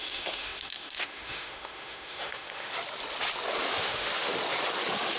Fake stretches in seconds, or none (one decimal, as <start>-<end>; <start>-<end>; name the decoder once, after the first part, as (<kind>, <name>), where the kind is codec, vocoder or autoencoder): 0.0-2.7 (autoencoder, DAC-VAE); 3.8-4.3